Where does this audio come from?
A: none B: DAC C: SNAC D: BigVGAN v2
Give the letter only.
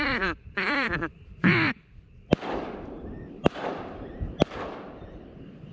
D